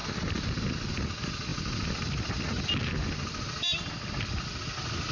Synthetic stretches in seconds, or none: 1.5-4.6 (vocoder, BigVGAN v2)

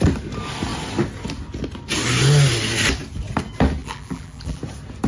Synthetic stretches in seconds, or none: 3.8-4.6 (vocoder, BigVGAN v2)